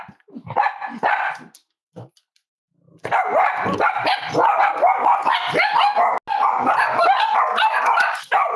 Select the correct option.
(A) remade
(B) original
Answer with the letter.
B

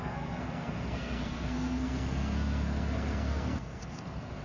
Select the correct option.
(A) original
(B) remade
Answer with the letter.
B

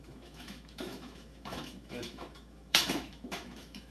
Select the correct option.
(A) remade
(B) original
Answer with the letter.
A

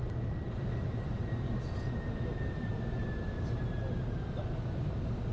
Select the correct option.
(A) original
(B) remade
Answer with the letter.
A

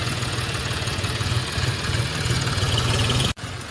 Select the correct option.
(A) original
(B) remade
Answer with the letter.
B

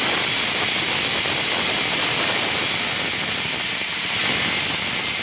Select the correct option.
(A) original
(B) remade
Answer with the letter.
A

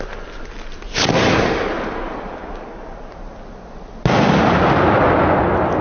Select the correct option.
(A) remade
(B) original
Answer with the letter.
B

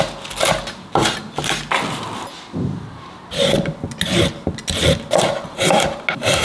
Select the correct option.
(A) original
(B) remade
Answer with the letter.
A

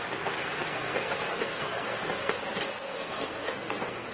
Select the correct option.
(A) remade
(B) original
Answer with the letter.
A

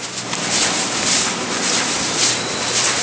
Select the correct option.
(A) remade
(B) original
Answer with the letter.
A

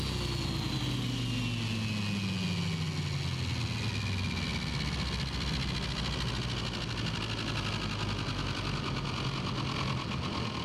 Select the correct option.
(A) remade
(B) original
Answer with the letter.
B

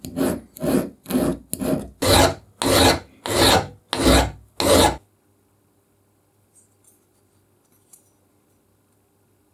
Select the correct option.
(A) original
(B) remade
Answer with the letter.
A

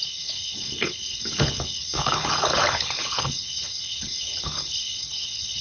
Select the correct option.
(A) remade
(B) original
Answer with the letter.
A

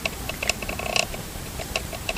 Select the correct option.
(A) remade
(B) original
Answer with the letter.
A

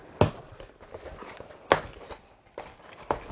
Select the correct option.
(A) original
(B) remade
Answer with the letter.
A